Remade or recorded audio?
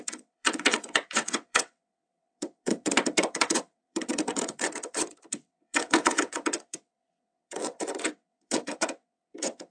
remade